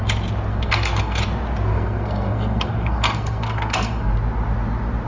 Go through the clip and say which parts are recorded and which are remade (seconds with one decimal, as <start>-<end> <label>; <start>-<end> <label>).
0.0-0.5 recorded; 0.5-1.2 remade; 1.2-1.7 recorded; 1.7-4.1 remade; 4.1-5.1 recorded